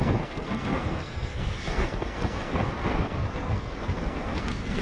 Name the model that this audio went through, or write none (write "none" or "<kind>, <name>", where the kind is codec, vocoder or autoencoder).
codec, SNAC